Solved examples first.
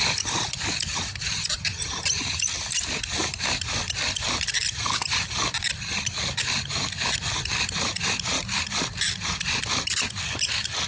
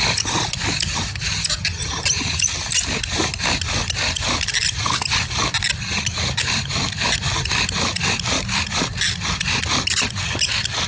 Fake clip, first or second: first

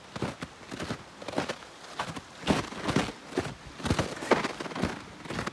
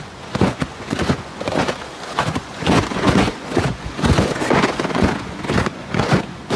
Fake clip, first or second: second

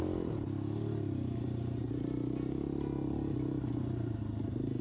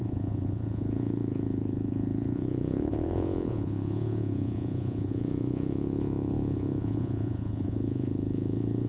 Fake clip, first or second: second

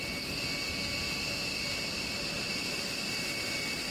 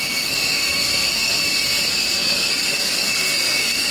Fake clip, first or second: second